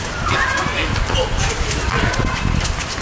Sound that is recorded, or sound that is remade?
recorded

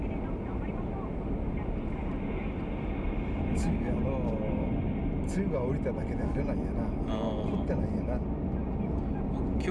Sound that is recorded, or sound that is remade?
recorded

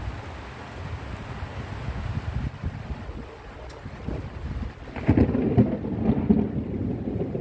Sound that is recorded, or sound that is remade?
recorded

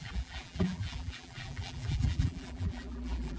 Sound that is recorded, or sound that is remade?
remade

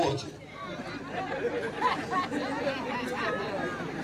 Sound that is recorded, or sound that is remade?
recorded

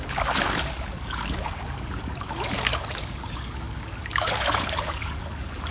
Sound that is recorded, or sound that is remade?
remade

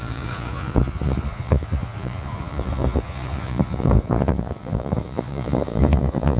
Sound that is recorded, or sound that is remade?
remade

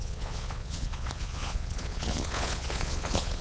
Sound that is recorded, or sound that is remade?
remade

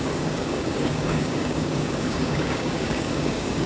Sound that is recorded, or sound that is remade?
remade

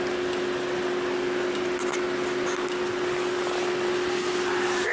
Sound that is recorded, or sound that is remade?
recorded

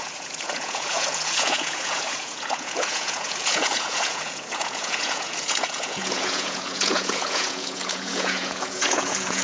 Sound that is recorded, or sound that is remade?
remade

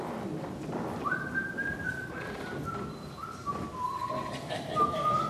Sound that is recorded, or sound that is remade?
remade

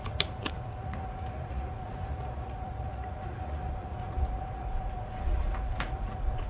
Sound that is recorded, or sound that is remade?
remade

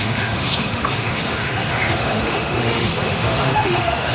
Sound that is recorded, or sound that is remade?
remade